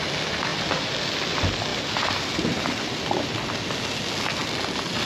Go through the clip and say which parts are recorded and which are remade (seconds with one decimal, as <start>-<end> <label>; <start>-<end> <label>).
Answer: 0.0-1.7 recorded; 1.7-3.7 remade; 3.7-5.1 recorded